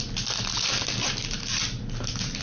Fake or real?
real